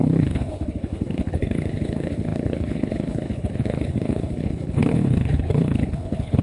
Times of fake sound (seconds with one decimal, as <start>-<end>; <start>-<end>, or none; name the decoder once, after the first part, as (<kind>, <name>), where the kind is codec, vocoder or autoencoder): 0.0-6.4 (codec, HILCodec)